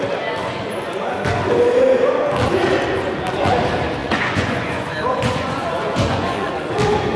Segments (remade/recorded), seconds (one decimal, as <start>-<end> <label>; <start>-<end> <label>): 0.0-0.4 recorded; 0.4-1.1 remade; 1.1-4.0 recorded; 4.0-6.7 remade; 6.7-7.2 recorded